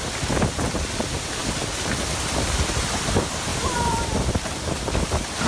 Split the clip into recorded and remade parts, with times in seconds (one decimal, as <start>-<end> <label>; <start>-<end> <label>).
0.0-1.4 remade; 1.4-2.6 recorded; 2.6-5.5 remade